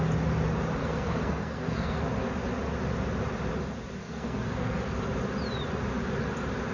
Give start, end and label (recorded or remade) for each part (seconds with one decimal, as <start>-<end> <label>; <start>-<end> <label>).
0.0-0.8 recorded; 0.8-2.0 remade; 2.0-4.0 recorded; 4.0-4.8 remade; 4.8-6.7 recorded